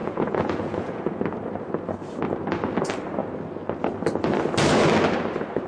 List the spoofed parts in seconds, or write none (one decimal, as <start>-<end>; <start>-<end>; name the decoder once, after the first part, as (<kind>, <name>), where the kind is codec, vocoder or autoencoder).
0.0-1.0 (vocoder, Vocos)